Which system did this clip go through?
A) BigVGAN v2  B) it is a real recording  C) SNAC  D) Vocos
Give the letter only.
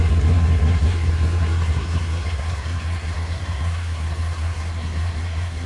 C